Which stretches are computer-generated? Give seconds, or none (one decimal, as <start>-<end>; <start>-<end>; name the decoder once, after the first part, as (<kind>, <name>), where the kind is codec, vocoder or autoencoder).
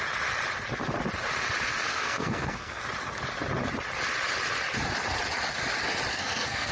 1.9-2.8 (codec, SNAC); 6.1-6.7